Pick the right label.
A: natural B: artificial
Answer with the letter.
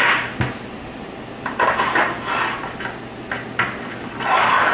A